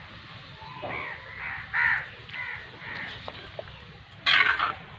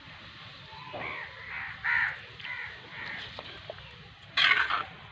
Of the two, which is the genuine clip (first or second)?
first